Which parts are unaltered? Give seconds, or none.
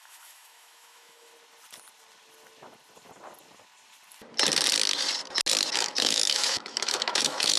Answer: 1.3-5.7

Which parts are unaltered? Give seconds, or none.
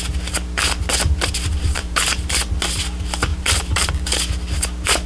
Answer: 0.0-1.8; 2.5-3.3; 3.9-5.1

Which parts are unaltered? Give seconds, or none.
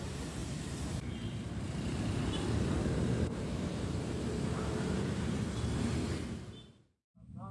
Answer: none